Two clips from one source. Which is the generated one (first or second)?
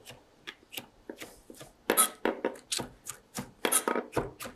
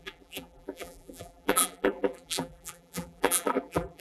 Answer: second